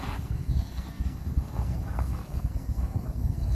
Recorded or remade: remade